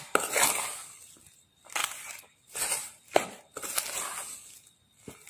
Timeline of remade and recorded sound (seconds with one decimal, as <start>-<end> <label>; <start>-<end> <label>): 0.0-5.3 recorded